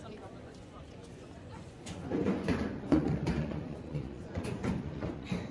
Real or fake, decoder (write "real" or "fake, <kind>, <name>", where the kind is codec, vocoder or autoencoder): fake, vocoder, Vocos